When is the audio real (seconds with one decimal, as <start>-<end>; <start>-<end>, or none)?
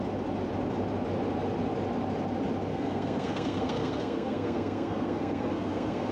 0.0-2.7